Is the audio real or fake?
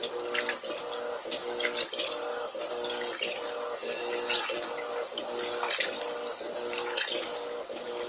real